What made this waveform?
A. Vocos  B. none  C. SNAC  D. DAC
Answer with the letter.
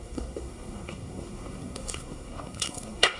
C